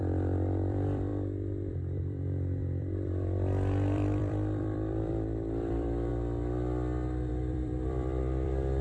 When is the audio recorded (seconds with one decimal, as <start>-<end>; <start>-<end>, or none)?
1.1-1.7; 6.1-7.3